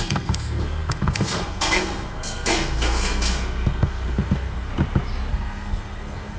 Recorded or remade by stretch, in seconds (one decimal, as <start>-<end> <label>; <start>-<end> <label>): 0.0-4.7 remade; 4.7-5.3 recorded; 5.3-6.4 remade